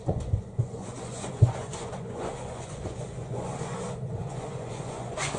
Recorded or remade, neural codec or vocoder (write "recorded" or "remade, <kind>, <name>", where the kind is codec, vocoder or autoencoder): remade, vocoder, Vocos